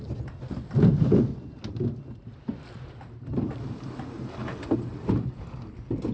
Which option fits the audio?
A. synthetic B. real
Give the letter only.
B